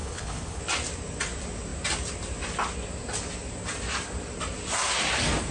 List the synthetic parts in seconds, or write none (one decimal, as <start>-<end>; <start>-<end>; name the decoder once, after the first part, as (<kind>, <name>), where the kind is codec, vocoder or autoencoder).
0.0-0.6 (codec, HILCodec)